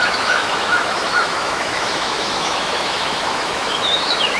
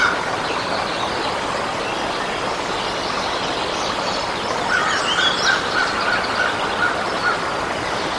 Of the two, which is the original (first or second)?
second